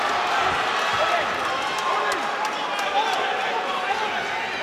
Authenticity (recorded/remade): recorded